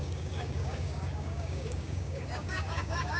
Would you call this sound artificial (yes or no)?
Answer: yes